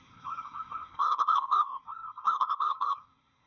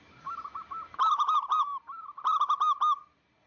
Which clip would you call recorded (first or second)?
second